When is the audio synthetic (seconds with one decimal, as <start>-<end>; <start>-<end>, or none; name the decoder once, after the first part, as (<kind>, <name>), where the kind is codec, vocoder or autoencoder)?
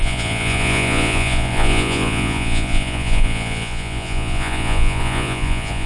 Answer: 0.0-5.9 (vocoder, Vocos)